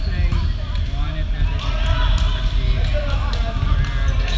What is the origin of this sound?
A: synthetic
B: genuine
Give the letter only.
B